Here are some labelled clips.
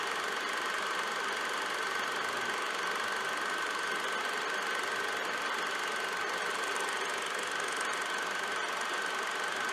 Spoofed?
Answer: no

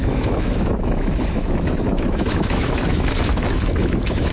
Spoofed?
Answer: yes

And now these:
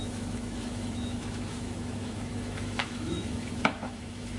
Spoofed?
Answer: yes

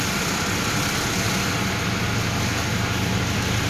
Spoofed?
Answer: no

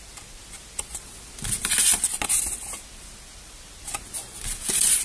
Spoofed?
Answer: no